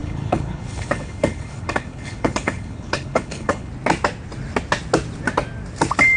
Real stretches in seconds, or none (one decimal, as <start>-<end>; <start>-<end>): 3.7-6.2